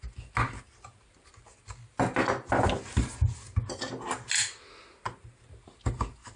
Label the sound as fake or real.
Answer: real